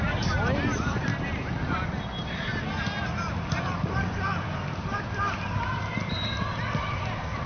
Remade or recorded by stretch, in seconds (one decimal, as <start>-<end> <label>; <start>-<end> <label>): 0.0-7.5 remade